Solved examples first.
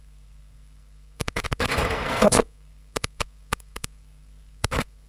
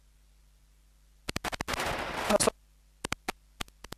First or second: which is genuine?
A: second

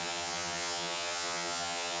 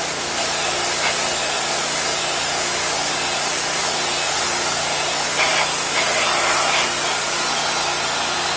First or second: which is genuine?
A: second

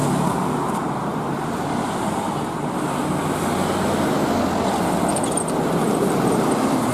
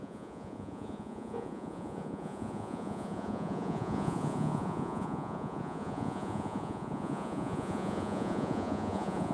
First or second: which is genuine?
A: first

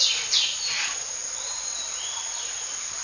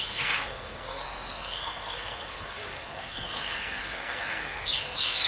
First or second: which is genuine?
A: first